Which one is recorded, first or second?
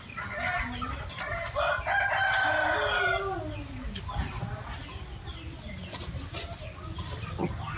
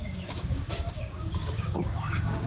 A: first